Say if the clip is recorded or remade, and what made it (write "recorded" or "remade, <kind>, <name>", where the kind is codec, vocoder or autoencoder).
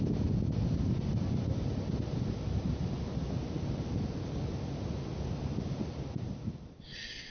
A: recorded